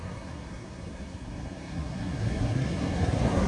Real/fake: fake